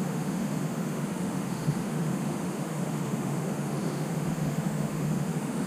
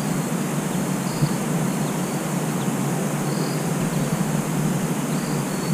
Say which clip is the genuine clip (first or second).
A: second